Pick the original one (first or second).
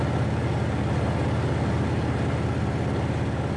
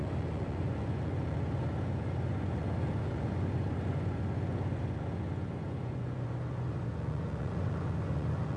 first